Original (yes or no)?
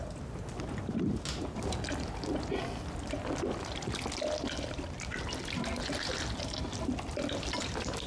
yes